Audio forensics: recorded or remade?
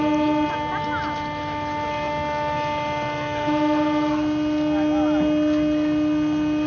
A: recorded